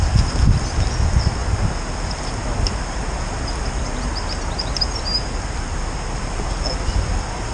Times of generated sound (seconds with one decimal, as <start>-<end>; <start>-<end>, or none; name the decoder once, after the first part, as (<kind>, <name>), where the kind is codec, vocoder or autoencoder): none